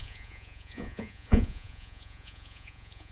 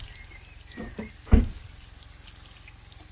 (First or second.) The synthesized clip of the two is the first